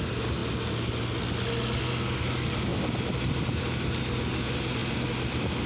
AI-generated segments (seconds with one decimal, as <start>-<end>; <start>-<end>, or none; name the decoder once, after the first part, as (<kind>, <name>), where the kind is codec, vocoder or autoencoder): none